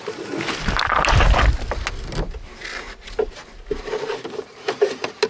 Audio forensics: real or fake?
real